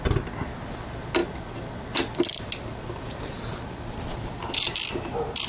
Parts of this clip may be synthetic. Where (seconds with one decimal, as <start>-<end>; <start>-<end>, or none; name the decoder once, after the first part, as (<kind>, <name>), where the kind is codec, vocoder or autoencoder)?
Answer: none